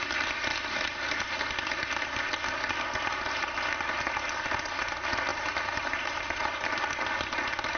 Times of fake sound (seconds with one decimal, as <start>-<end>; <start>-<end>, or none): 5.3-6.9